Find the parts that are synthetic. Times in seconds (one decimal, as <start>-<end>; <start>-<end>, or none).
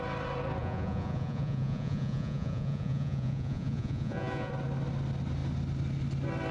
0.6-4.5